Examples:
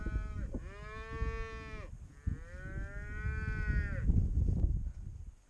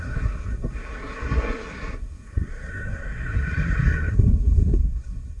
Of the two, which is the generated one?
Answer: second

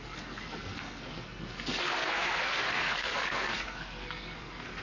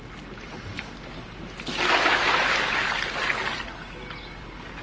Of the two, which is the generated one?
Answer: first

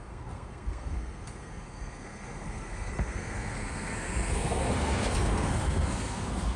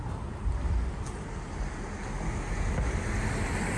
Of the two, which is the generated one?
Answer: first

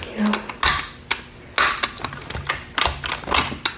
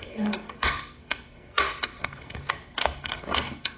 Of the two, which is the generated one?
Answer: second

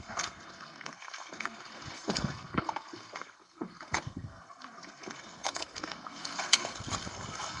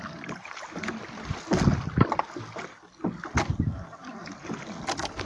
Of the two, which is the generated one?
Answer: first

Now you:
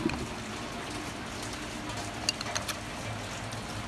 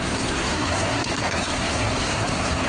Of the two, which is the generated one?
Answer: second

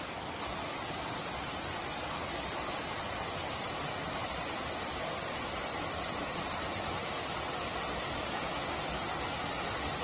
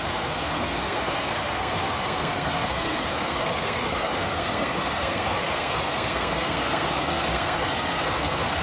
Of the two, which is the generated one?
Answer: second